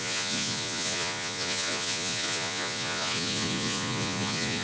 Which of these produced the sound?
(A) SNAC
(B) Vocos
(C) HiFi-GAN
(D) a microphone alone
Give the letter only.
B